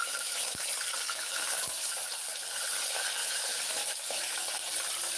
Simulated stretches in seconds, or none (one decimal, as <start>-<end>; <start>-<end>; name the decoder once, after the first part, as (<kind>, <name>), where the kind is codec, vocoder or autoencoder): 0.0-0.6 (autoencoder, DAC-VAE); 1.3-1.9; 3.2-4.3